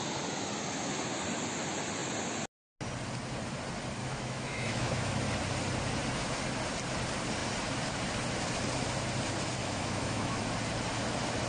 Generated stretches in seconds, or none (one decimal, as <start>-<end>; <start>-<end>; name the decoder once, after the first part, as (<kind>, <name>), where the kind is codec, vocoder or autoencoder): 4.0-5.2 (autoencoder, DAC-VAE); 9.6-10.4